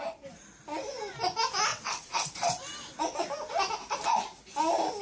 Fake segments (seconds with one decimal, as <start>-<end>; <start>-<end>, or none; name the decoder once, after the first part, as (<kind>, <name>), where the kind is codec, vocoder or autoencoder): 1.7-2.5 (vocoder, WaveNeXt)